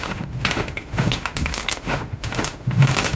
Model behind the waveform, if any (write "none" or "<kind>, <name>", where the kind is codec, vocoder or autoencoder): autoencoder, DAC-VAE